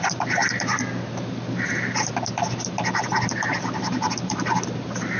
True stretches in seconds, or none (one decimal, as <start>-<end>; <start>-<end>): 0.4-3.5